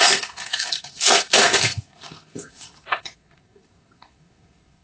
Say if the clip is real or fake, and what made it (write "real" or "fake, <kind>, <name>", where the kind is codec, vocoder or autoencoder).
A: fake, codec, SNAC